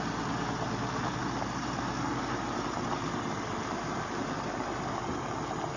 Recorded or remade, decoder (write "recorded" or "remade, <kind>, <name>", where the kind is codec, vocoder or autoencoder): recorded